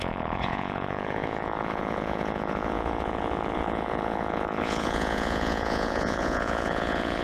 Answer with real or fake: fake